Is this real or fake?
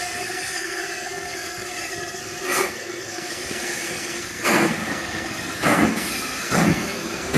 fake